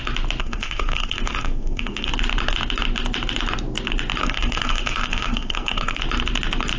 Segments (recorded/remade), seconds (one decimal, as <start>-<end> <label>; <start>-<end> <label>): 0.0-0.4 recorded; 0.4-2.1 remade; 2.1-4.2 recorded; 4.2-6.0 remade; 6.0-6.8 recorded